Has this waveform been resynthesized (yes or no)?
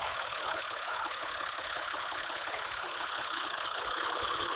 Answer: yes